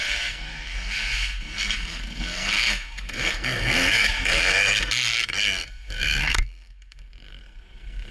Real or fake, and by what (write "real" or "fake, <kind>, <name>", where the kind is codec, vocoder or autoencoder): fake, codec, SNAC